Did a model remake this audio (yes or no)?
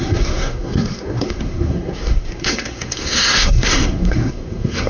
yes